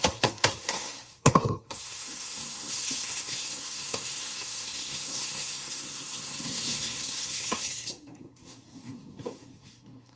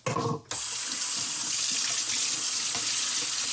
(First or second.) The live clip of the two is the second